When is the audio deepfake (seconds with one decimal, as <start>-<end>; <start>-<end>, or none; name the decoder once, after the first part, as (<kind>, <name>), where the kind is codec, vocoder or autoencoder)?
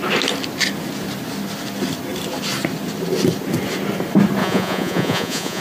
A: 4.4-5.6 (vocoder, Vocos)